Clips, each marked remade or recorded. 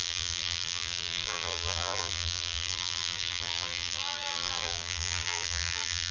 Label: remade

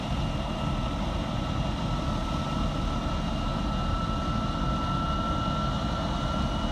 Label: recorded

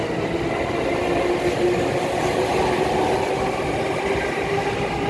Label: recorded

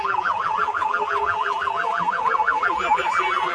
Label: remade